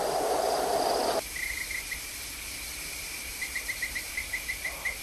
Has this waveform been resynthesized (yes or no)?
no